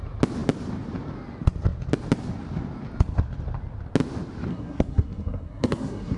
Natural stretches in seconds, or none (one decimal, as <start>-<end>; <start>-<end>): 0.0-4.5